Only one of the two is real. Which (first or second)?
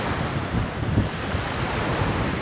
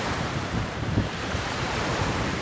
first